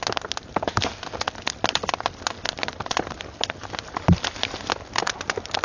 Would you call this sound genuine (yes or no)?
yes